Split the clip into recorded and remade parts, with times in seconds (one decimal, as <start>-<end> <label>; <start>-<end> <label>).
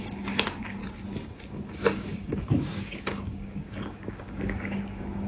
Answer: 0.0-0.8 remade; 0.8-1.3 recorded; 1.3-5.3 remade